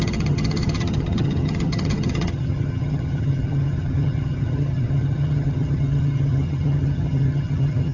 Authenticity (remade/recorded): remade